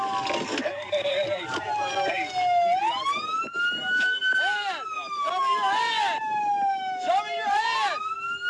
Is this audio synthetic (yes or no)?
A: no